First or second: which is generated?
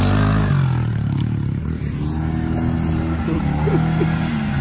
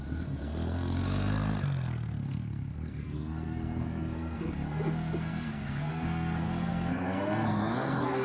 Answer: second